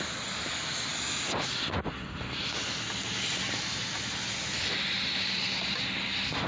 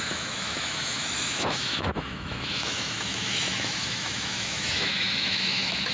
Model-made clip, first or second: second